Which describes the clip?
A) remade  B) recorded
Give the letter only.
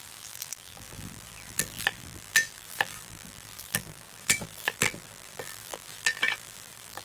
A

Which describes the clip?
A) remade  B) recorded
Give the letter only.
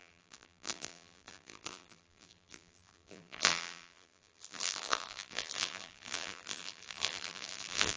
A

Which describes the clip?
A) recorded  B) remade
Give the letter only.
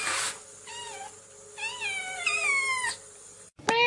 A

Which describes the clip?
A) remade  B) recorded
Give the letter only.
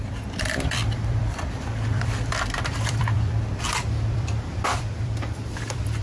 A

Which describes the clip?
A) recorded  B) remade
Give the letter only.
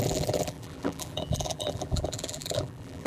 B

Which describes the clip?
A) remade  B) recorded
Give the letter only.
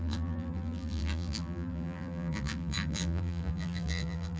A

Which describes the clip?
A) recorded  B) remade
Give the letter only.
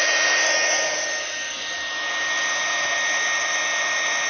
A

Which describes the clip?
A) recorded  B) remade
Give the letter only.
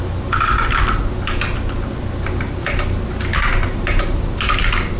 A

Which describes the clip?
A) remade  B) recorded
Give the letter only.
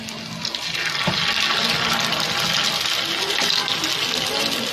B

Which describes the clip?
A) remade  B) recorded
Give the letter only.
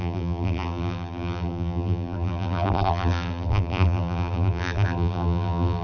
A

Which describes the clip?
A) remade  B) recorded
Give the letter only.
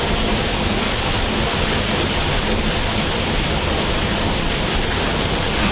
A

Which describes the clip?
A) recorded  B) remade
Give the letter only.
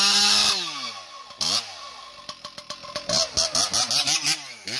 A